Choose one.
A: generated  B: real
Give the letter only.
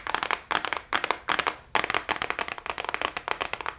B